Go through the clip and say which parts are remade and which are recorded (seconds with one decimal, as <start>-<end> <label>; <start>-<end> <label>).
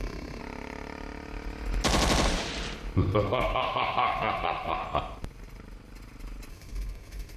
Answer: 0.0-0.4 remade; 0.4-3.2 recorded; 3.2-4.8 remade; 4.8-6.5 recorded; 6.5-7.4 remade